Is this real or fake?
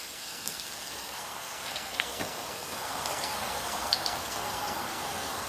fake